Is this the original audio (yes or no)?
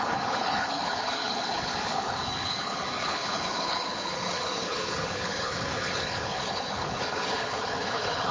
no